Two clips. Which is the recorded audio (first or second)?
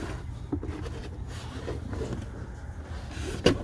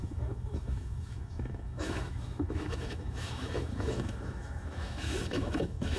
first